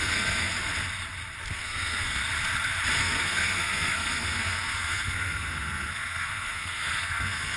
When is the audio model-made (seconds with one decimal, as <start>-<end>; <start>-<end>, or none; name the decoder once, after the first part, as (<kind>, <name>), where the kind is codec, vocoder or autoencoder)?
0.0-0.5 (codec, SNAC); 1.5-2.2; 3.0-7.6